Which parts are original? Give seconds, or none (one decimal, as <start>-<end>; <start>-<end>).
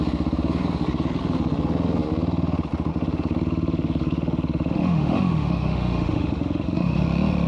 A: 0.0-2.9; 7.0-7.5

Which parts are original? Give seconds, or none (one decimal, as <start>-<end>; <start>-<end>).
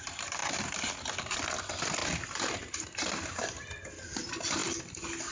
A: 0.0-5.3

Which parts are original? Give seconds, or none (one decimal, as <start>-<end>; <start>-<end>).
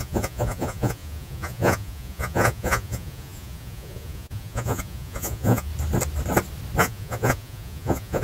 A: 5.7-6.8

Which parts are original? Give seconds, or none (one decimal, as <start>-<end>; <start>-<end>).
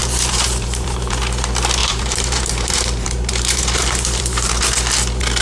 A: 1.2-1.8; 4.6-5.4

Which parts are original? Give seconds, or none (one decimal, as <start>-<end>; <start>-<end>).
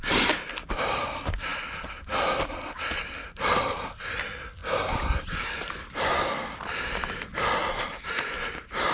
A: 0.0-8.9